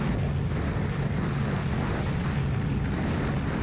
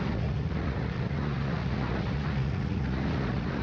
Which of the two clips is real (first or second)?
first